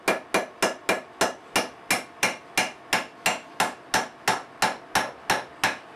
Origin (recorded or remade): recorded